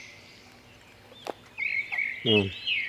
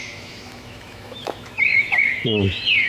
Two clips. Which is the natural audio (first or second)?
first